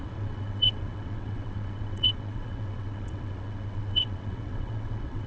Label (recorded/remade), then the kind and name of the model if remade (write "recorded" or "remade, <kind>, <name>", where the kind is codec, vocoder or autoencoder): remade, vocoder, WaveNeXt